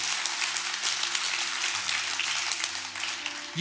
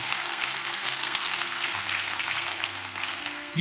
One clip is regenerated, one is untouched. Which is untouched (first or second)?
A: first